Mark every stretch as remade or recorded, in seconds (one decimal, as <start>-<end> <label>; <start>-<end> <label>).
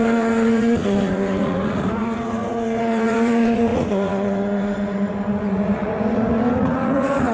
0.0-7.3 remade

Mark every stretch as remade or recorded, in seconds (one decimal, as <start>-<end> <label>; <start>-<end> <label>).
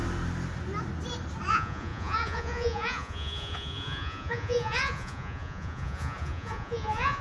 0.0-1.5 recorded; 1.5-7.2 remade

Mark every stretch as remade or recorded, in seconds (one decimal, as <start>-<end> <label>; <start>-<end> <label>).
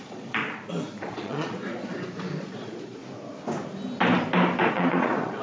0.0-0.4 remade; 0.4-1.0 recorded; 1.0-1.9 remade; 1.9-2.4 recorded; 2.4-3.0 remade; 3.0-4.7 recorded; 4.7-5.4 remade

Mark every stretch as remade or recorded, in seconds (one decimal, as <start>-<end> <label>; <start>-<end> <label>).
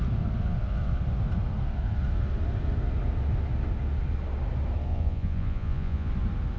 0.0-4.9 recorded; 4.9-6.1 remade; 6.1-6.6 recorded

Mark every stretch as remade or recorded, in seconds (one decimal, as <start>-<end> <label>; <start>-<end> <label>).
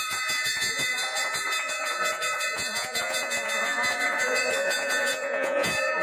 0.0-6.0 remade